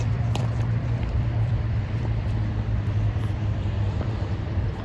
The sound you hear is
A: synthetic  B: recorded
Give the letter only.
A